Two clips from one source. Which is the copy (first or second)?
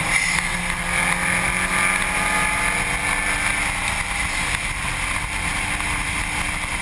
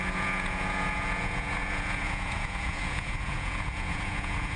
second